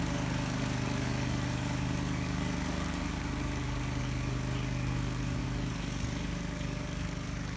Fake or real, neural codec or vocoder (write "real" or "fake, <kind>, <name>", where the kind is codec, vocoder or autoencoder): fake, codec, DAC